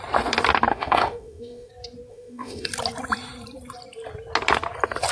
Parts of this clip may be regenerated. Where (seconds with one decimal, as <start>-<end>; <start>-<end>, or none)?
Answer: 0.7-1.7; 2.1-2.7